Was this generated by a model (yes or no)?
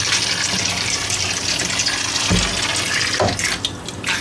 no